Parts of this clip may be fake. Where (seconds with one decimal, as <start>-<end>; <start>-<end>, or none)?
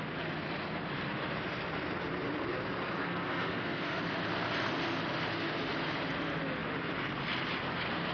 3.0-4.0